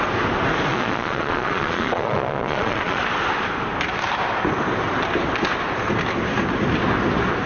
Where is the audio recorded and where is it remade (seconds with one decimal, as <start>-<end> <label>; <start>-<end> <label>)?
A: 0.0-0.7 recorded; 0.7-3.0 remade; 3.0-7.5 recorded